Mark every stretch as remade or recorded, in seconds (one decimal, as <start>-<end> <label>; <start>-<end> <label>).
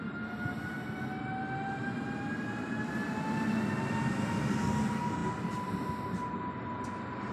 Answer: 0.0-7.3 recorded